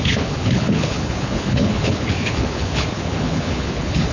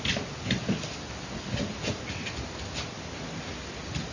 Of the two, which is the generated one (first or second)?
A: first